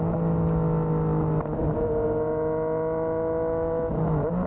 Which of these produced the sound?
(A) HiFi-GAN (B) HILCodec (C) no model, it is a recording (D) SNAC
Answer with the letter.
C